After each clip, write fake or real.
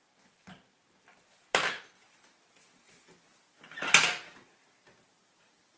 real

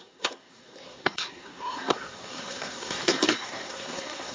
fake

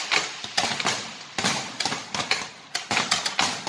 real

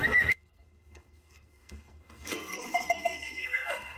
fake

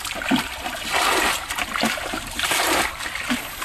real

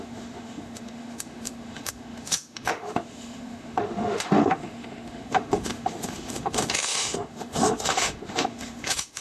fake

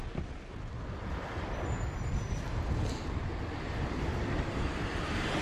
real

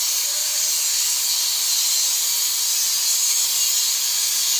real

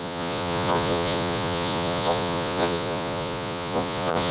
fake